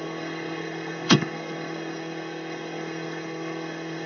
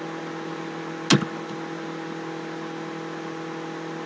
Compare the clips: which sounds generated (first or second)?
first